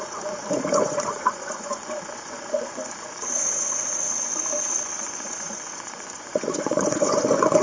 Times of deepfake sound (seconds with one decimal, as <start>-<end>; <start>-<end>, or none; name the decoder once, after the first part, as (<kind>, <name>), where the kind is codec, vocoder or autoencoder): 0.0-7.6 (vocoder, Vocos)